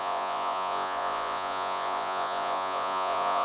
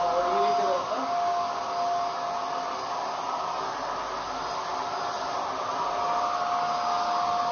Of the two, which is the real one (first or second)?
second